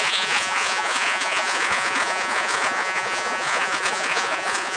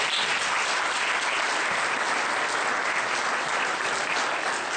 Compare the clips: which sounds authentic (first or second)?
second